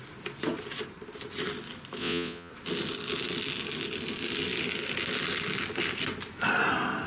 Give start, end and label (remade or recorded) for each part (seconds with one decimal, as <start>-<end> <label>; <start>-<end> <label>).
0.0-2.0 recorded; 2.0-2.5 remade; 2.5-7.1 recorded